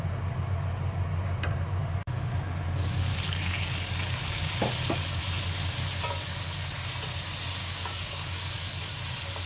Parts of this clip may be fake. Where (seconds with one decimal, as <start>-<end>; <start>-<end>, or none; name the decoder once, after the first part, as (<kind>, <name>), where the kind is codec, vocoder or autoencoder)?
1.8-5.2 (codec, DAC); 7.6-8.9